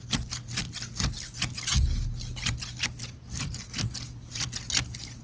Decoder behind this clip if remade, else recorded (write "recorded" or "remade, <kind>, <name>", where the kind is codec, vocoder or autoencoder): recorded